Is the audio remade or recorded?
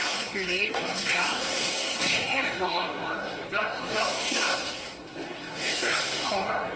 remade